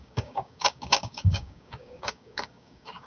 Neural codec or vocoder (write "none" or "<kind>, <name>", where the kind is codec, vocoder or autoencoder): codec, DAC